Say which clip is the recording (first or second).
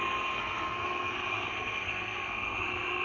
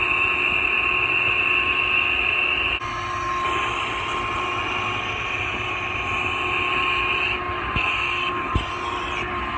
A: second